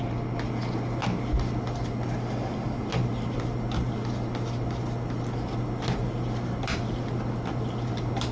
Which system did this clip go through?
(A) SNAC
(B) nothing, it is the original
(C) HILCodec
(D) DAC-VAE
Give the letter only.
B